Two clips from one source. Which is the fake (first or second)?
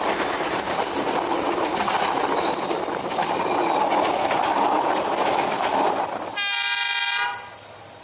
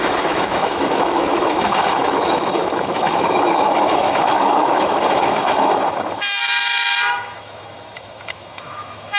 second